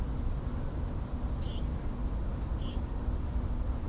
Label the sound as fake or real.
real